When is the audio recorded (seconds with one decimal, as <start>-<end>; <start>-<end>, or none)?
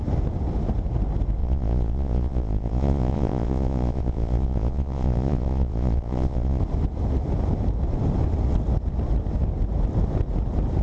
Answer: 0.0-1.4; 6.6-10.8